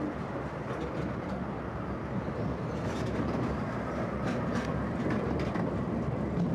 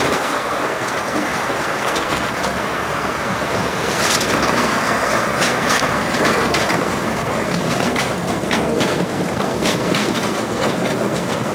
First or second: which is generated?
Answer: second